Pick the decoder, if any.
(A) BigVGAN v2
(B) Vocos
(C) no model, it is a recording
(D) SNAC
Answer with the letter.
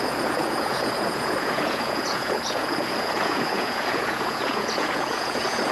B